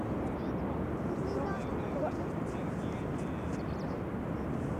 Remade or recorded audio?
recorded